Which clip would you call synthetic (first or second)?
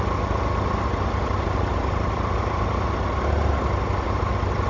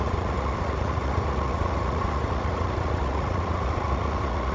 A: second